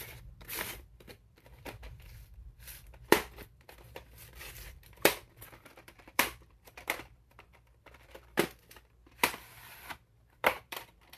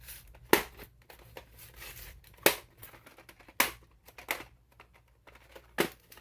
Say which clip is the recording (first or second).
second